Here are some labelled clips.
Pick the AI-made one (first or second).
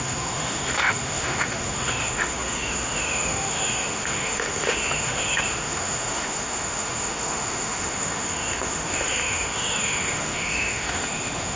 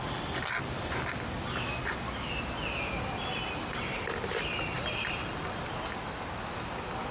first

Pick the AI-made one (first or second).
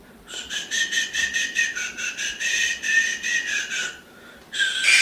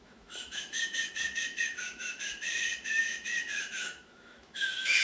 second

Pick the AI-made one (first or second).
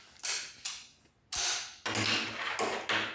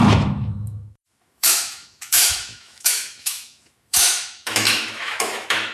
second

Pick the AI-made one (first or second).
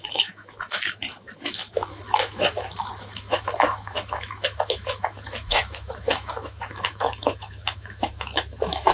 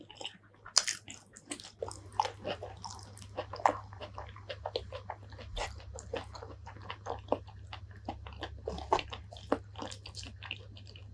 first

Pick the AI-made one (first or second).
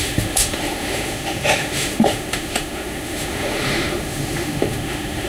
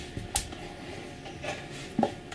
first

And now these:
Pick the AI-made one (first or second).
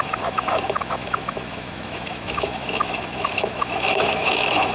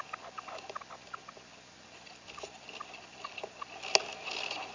first